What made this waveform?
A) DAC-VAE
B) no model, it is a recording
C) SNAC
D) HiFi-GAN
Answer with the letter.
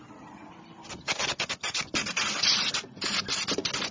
B